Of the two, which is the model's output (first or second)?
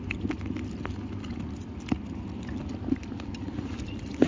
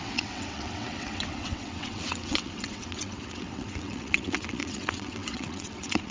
second